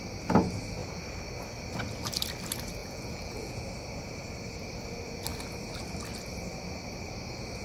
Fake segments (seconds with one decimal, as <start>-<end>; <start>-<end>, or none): 2.8-3.6